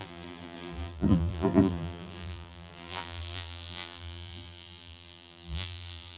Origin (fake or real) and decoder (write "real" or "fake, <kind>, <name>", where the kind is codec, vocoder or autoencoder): fake, vocoder, BigVGAN v2